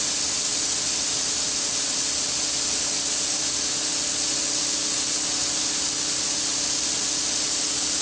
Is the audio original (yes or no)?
yes